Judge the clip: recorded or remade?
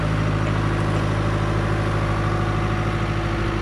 recorded